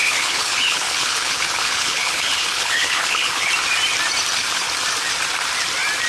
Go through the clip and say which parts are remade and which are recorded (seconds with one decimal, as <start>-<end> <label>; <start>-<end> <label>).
0.0-3.5 remade; 3.5-6.1 recorded